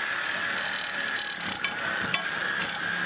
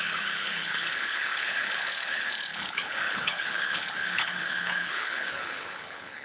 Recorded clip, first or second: first